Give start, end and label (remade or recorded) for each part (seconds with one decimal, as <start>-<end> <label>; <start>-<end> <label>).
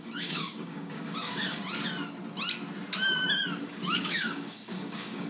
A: 0.0-1.6 remade; 1.6-3.6 recorded; 3.6-5.3 remade